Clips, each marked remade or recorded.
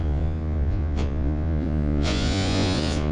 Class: remade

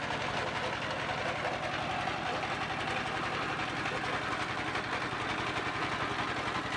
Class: recorded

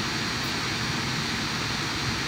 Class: recorded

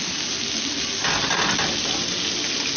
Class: recorded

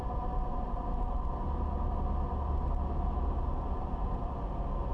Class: recorded